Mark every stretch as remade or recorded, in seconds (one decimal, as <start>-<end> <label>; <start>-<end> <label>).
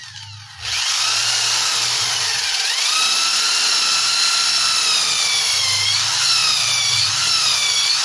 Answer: 0.0-8.0 recorded